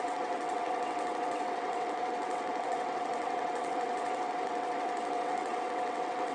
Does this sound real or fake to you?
fake